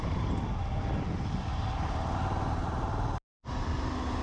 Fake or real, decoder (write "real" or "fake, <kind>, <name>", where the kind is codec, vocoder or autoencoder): real